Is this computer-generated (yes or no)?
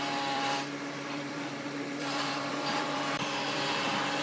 yes